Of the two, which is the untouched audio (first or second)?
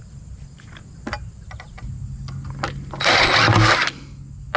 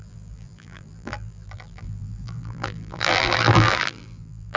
first